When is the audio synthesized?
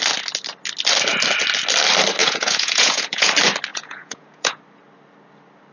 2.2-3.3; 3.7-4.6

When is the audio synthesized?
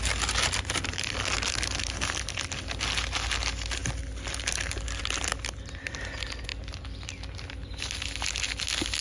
none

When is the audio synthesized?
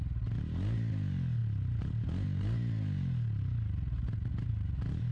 none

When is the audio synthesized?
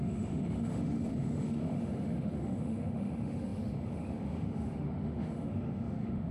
0.0-6.3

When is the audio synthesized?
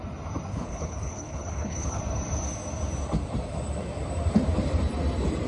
0.5-2.0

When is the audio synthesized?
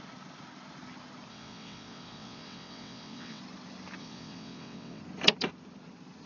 1.3-3.4; 4.0-5.0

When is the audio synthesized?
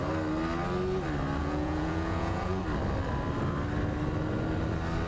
1.4-2.6